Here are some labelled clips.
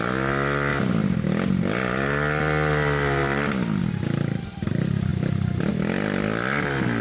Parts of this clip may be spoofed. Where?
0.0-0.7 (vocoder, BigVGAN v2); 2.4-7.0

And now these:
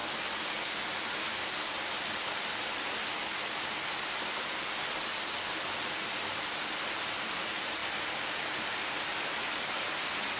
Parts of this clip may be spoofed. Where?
none

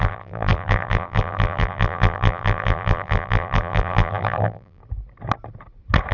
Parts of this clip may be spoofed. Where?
0.0-4.8 (vocoder, BigVGAN v2)